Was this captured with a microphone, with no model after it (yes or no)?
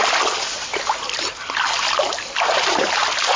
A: yes